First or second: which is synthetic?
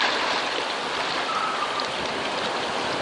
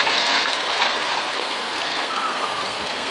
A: second